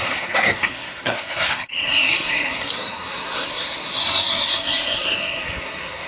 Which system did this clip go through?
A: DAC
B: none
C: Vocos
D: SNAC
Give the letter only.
D